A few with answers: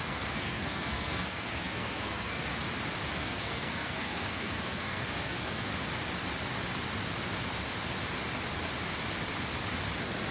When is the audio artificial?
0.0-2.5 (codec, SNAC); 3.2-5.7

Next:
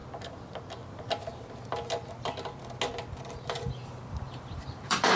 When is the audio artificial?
3.1-5.2 (vocoder, BigVGAN v2)